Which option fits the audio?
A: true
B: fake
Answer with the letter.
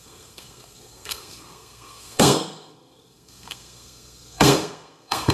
B